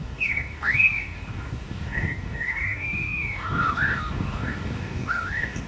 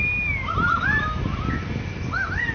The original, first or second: second